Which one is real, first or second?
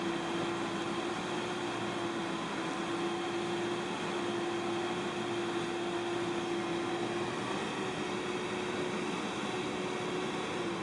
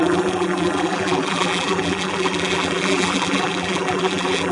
first